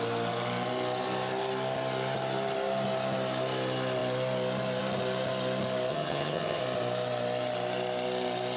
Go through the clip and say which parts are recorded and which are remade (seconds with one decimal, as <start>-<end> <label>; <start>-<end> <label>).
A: 0.0-5.9 recorded; 5.9-6.6 remade; 6.6-8.6 recorded

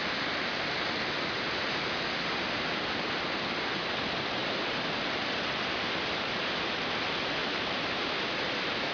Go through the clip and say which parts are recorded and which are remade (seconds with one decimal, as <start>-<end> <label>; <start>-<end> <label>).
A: 0.0-7.4 recorded; 7.4-8.2 remade; 8.2-8.9 recorded